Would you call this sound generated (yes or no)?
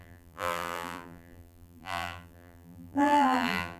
yes